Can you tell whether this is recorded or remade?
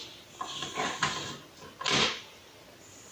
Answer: recorded